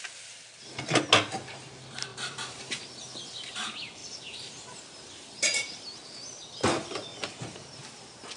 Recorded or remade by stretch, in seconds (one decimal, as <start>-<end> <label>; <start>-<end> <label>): 0.0-2.1 recorded; 2.1-2.8 remade; 2.8-4.0 recorded; 4.0-5.8 remade; 5.8-7.1 recorded; 7.1-7.8 remade; 7.8-8.4 recorded